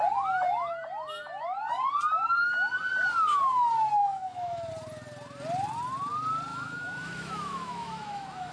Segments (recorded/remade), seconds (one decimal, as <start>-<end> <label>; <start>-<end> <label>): 0.0-4.0 recorded; 4.0-4.7 remade; 4.7-6.5 recorded; 6.5-8.5 remade